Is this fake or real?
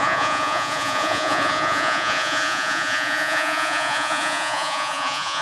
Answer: fake